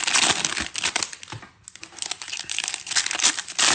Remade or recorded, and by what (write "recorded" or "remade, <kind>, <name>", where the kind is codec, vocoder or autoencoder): recorded